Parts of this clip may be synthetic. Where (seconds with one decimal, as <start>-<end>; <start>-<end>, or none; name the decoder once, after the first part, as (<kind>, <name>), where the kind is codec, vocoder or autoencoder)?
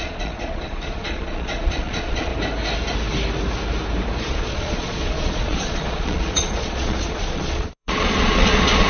0.0-2.3 (vocoder, Vocos); 4.3-8.9